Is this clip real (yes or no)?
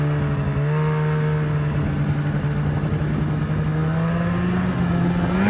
yes